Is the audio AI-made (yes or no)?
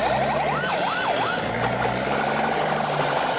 no